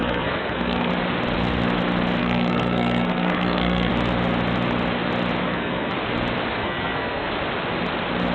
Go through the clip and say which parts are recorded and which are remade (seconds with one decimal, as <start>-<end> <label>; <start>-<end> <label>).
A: 0.0-0.9 remade; 0.9-2.2 recorded; 2.2-3.9 remade; 3.9-5.4 recorded; 5.4-5.9 remade; 5.9-6.6 recorded; 6.6-7.3 remade; 7.3-8.3 recorded